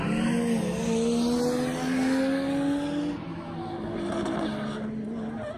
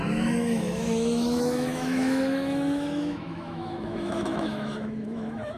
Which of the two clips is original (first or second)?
first